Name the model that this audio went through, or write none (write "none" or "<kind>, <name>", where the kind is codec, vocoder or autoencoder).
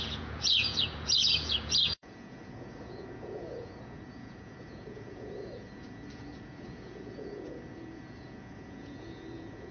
vocoder, Vocos